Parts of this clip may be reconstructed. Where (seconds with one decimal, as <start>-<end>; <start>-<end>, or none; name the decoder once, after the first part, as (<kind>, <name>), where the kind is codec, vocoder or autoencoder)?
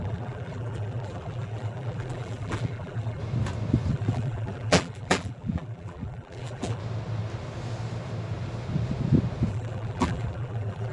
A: 0.0-3.2 (vocoder, BigVGAN v2); 3.9-6.8; 9.5-10.9